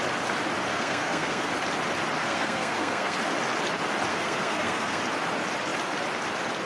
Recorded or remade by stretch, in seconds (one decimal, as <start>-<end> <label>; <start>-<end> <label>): 0.0-0.7 recorded; 0.7-1.5 remade; 1.5-2.2 recorded; 2.2-3.2 remade; 3.2-4.1 recorded; 4.1-5.0 remade; 5.0-6.7 recorded